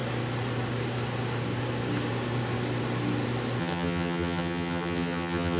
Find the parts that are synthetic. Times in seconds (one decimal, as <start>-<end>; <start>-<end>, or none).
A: 3.6-5.6